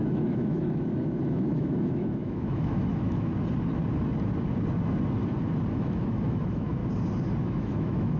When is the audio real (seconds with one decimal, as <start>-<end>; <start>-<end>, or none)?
3.3-5.7; 6.8-7.4